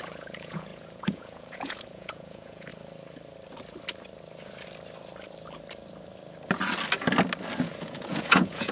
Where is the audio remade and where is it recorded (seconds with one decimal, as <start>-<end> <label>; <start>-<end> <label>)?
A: 0.0-2.7 remade; 2.7-7.6 recorded; 7.6-8.7 remade